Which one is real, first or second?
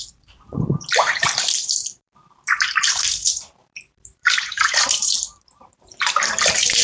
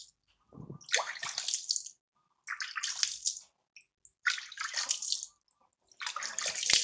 second